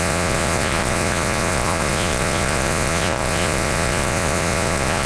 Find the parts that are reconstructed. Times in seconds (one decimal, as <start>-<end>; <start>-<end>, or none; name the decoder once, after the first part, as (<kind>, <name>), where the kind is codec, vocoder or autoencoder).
0.0-5.1 (vocoder, Vocos)